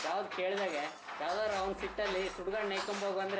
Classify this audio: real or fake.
real